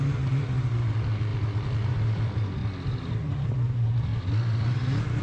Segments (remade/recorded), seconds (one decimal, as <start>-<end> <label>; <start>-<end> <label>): 0.0-2.6 remade; 2.6-3.2 recorded; 3.2-4.1 remade; 4.1-5.2 recorded